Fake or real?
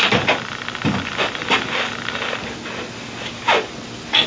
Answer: real